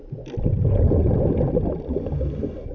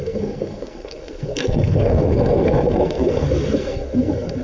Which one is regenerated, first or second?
second